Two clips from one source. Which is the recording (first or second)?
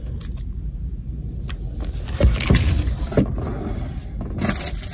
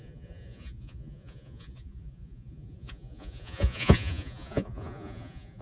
first